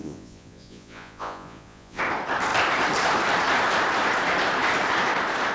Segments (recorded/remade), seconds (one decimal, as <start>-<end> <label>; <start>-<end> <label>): 0.0-2.0 remade; 2.0-5.5 recorded